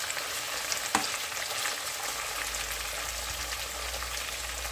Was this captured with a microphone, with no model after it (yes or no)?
yes